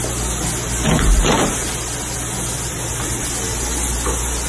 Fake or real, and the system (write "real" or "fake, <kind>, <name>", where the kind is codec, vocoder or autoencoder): real